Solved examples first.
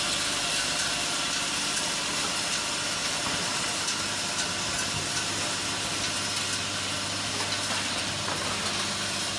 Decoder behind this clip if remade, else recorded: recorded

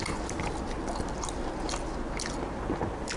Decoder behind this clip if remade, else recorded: recorded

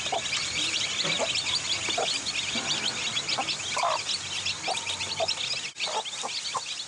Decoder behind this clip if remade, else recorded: recorded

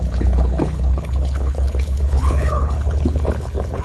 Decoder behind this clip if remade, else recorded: remade, codec, HILCodec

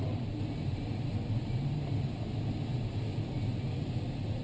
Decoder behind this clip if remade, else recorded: recorded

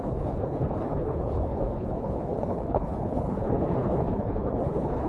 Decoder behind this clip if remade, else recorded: remade, codec, HILCodec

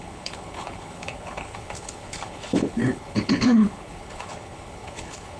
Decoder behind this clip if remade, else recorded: remade, codec, HILCodec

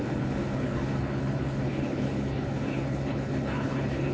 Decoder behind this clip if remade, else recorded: remade, codec, HILCodec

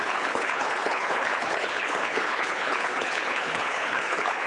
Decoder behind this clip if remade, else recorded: remade, codec, HILCodec